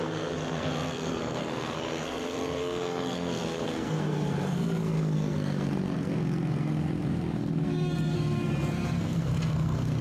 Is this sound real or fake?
fake